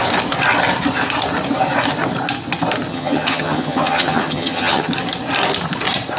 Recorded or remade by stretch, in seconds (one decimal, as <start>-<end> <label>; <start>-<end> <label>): 0.0-2.9 recorded; 2.9-4.9 remade; 4.9-6.2 recorded